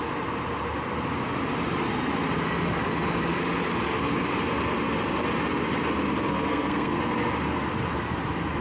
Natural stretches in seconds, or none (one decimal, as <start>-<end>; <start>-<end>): 0.0-6.3; 7.0-8.6